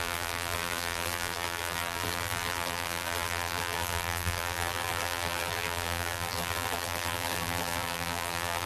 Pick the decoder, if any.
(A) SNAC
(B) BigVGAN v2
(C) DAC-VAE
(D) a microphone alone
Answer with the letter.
B